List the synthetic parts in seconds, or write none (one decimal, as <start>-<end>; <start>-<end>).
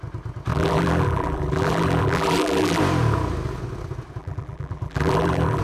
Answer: 0.5-2.8; 4.2-5.6